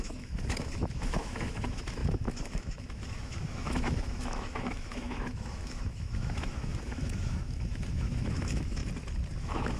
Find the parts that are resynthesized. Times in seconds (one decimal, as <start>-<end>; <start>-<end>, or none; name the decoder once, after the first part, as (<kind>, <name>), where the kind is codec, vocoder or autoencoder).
0.0-8.8 (autoencoder, DAC-VAE); 9.4-9.8